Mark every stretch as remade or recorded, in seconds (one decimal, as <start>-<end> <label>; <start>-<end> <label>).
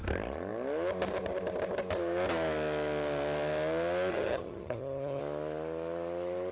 0.0-4.1 recorded; 4.1-5.2 remade; 5.2-6.5 recorded